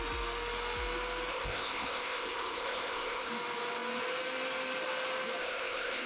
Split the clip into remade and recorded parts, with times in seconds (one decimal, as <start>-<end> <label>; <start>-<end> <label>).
0.0-1.3 recorded; 1.3-3.3 remade; 3.3-5.4 recorded; 5.4-6.1 remade